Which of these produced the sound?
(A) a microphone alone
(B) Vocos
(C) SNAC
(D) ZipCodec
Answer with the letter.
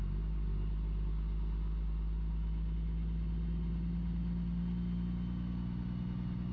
A